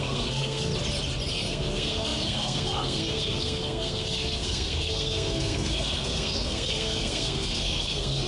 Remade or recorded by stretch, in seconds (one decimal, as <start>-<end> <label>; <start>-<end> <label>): 0.0-0.7 remade; 0.7-1.3 recorded; 1.3-8.3 remade